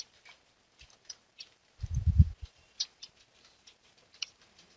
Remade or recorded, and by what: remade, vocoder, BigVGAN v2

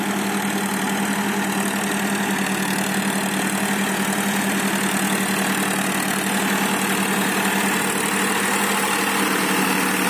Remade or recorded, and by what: recorded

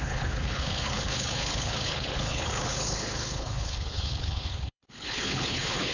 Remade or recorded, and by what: remade, codec, HILCodec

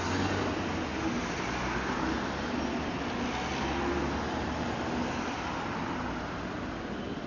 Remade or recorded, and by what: recorded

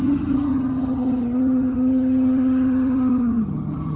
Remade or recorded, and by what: remade, vocoder, HiFi-GAN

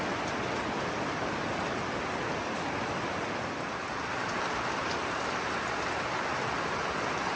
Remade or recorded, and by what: recorded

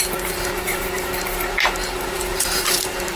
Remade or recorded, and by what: remade, vocoder, BigVGAN v2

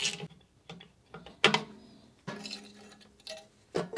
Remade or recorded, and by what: recorded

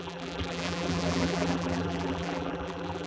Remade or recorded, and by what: remade, vocoder, BigVGAN v2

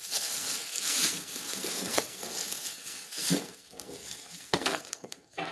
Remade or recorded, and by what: remade, codec, SNAC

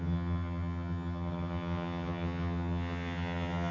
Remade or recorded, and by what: remade, vocoder, HiFi-GAN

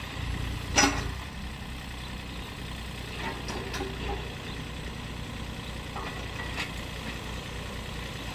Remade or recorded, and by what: recorded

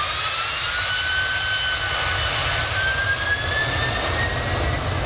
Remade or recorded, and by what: recorded